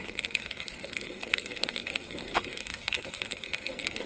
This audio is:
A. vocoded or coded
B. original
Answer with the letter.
A